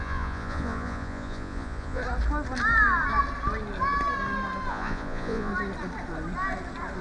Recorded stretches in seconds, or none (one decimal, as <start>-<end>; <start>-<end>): 2.0-4.7; 5.5-7.0